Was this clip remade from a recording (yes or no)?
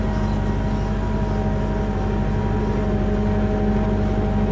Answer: no